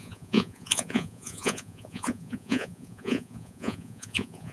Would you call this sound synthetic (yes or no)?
yes